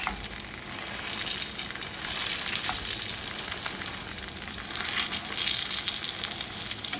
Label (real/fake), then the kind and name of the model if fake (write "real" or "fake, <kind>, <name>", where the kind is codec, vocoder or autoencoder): real